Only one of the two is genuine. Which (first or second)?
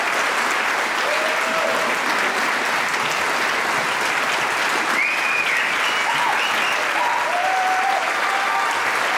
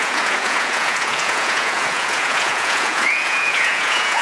first